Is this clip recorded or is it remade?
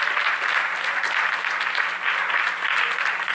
recorded